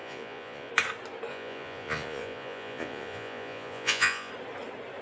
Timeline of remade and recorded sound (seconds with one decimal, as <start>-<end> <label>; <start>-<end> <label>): 0.0-0.7 remade; 0.7-1.3 recorded; 1.3-4.3 remade; 4.3-5.0 recorded